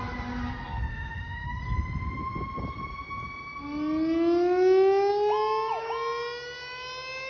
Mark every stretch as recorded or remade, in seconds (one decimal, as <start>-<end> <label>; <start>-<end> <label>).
0.0-0.9 recorded; 0.9-1.6 remade; 1.6-7.3 recorded